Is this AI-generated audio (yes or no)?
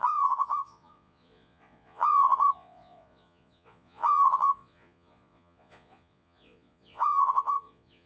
yes